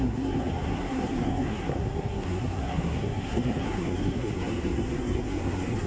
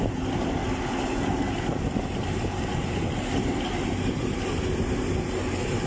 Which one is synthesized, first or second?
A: first